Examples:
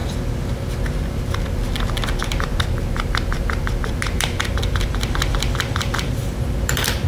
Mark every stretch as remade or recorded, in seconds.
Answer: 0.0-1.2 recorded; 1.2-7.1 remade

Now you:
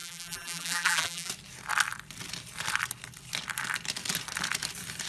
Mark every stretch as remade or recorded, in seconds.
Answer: 0.0-1.3 remade; 1.3-5.1 recorded

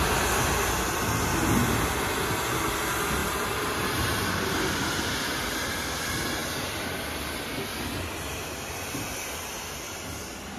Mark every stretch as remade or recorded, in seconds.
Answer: 0.0-3.2 recorded; 3.2-4.5 remade; 4.5-10.6 recorded

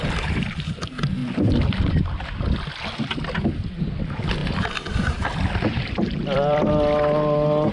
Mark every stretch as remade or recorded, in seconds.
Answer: 0.0-4.4 recorded; 4.4-6.7 remade; 6.7-7.7 recorded

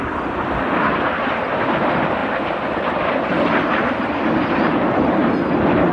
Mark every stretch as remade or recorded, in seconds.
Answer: 0.0-5.2 remade; 5.2-5.9 recorded

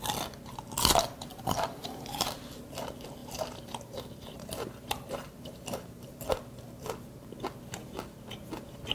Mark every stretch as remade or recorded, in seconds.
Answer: 0.0-1.3 recorded; 1.3-2.4 remade; 2.4-3.2 recorded; 3.2-6.1 remade; 6.1-8.9 recorded